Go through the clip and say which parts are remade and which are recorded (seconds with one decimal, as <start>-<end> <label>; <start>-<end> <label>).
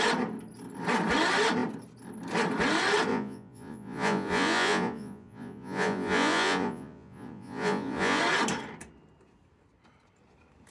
0.0-3.1 recorded; 3.1-8.2 remade; 8.2-10.7 recorded